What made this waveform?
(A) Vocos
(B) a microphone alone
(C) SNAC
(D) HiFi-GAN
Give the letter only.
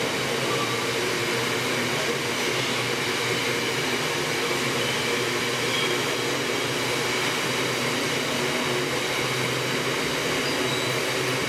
B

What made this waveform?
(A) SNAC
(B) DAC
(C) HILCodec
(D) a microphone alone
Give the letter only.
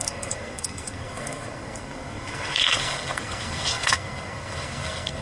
A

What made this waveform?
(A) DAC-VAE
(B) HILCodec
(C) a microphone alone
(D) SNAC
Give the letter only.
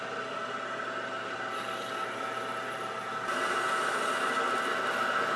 C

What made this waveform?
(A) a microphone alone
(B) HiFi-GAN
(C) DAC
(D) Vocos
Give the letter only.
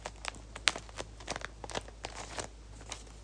A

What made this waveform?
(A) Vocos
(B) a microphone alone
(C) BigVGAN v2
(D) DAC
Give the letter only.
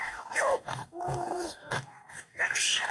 D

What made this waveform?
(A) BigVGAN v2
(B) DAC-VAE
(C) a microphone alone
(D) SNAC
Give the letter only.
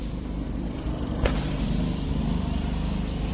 A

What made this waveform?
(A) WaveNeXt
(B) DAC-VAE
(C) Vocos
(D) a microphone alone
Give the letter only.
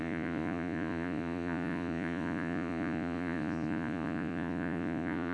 C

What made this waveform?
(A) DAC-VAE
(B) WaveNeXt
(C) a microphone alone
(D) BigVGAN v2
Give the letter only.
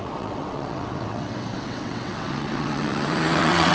B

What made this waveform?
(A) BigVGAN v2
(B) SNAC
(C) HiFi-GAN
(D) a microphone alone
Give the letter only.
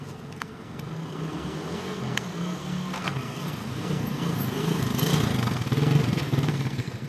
B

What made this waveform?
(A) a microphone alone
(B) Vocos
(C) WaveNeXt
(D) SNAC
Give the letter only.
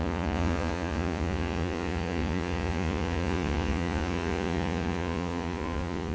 B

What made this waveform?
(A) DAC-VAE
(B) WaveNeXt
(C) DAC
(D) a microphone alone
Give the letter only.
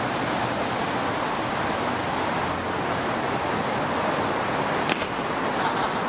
D